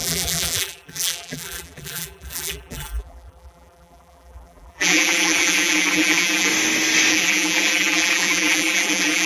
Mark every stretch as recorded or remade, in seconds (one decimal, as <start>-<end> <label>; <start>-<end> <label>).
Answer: 0.0-6.5 remade; 6.5-7.1 recorded; 7.1-9.3 remade